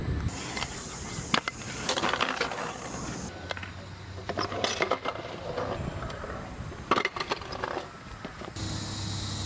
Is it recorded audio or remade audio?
recorded